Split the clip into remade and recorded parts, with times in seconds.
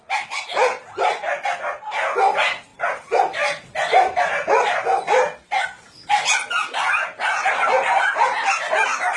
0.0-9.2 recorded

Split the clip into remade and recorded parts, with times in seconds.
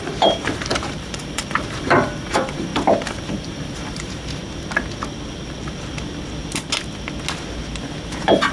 0.0-2.7 remade; 2.7-3.2 recorded; 3.2-4.4 remade; 4.4-8.1 recorded; 8.1-8.5 remade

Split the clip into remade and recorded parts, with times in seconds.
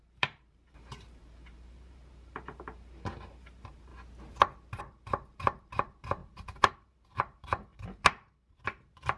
0.0-3.9 remade; 3.9-4.8 recorded; 4.8-9.2 remade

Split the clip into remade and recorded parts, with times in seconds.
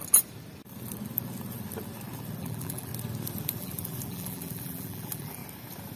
0.0-2.4 recorded; 2.4-2.9 remade; 2.9-3.6 recorded; 3.6-5.4 remade; 5.4-6.0 recorded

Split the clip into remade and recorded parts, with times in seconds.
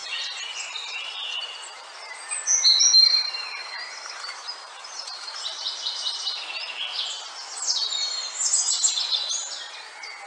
0.0-2.2 remade; 2.2-3.6 recorded; 3.6-6.4 remade; 6.4-10.3 recorded